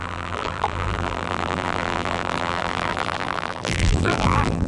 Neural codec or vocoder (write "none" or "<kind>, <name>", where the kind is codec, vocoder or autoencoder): vocoder, BigVGAN v2